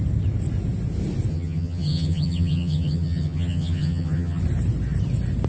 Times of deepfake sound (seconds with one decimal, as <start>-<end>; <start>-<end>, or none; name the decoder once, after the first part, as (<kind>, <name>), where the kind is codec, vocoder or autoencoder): 1.3-4.4 (vocoder, HiFi-GAN)